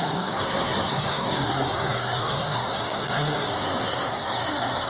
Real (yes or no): no